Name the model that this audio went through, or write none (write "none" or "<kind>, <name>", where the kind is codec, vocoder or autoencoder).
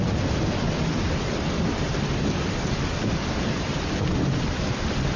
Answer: none